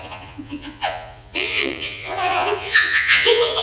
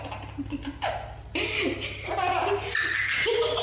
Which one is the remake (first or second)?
first